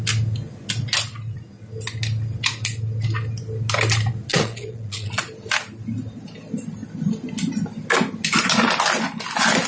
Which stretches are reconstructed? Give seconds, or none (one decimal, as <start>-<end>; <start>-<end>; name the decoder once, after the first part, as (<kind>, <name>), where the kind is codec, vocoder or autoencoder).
4.3-5.2 (vocoder, Vocos)